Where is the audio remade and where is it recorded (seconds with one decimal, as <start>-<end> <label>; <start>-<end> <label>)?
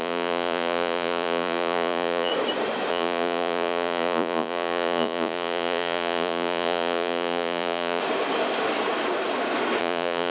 0.0-2.3 remade; 2.3-2.9 recorded; 2.9-8.0 remade; 8.0-9.8 recorded; 9.8-10.3 remade